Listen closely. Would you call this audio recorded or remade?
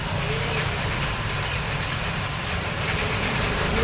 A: remade